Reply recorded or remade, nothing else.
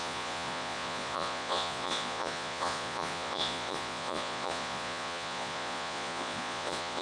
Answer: remade